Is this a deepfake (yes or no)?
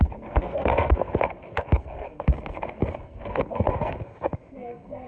yes